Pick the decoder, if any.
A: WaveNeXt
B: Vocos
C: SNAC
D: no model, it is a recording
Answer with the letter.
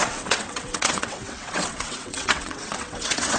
A